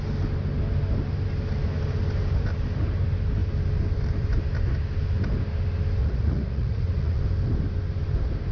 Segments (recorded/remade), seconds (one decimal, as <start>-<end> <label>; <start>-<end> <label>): 0.0-6.0 recorded; 6.0-7.2 remade; 7.2-8.5 recorded

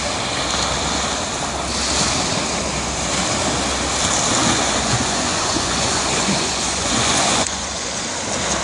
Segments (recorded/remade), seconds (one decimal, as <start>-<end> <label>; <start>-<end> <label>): 0.0-4.4 recorded; 4.4-8.0 remade; 8.0-8.6 recorded

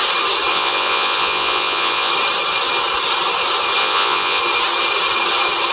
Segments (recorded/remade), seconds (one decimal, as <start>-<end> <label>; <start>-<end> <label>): 0.0-0.5 recorded; 0.5-2.1 remade; 2.1-3.8 recorded; 3.8-4.4 remade; 4.4-5.7 recorded